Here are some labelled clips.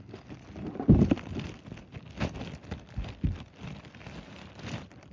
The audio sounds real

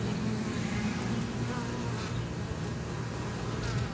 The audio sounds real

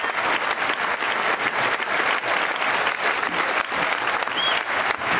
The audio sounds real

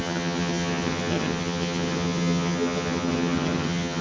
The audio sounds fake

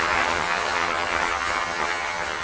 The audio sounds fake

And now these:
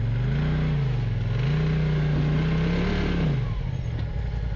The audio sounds real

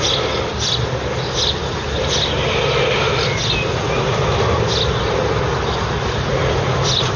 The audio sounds real